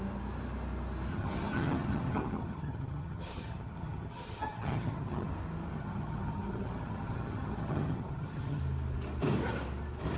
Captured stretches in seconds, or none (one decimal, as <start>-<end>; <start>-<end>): 0.0-1.1; 5.3-5.7; 8.6-10.2